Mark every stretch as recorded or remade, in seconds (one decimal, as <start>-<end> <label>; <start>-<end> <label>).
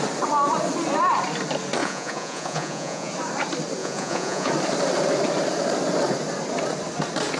0.0-1.8 recorded; 1.8-3.1 remade; 3.1-3.8 recorded; 3.8-4.5 remade; 4.5-7.4 recorded